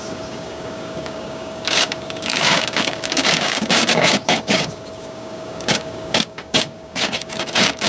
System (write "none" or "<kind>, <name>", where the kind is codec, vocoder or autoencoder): codec, DAC